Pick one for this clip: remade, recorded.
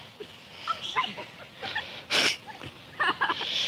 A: recorded